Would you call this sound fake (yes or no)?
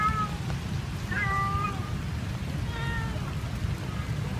no